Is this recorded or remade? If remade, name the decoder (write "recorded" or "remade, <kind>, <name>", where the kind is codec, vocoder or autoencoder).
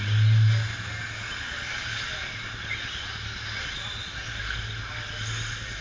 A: recorded